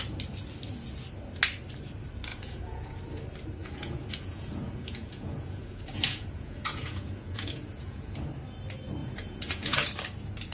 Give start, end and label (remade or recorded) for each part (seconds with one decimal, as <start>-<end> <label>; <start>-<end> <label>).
0.0-2.3 recorded; 2.3-3.0 remade; 3.0-3.6 recorded; 3.6-8.3 remade; 8.3-9.0 recorded; 9.0-9.9 remade; 9.9-10.5 recorded

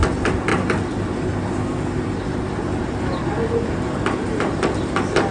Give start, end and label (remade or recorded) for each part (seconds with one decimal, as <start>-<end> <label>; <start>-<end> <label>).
0.0-0.5 recorded; 0.5-3.7 remade; 3.7-5.3 recorded

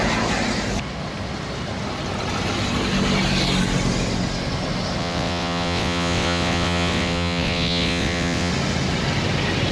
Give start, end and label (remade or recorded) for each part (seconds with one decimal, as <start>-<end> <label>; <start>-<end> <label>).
0.0-5.0 recorded; 5.0-8.5 remade; 8.5-9.7 recorded

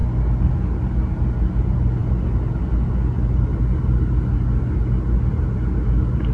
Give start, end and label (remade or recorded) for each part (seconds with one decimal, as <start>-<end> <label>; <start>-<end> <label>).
0.0-6.3 recorded

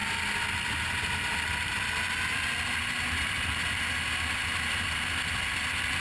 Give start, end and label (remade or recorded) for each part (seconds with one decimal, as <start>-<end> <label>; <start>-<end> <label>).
0.0-6.0 recorded